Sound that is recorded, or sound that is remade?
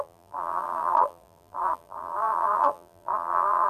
remade